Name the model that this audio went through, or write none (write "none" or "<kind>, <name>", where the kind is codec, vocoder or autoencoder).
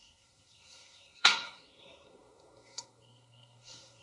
codec, SNAC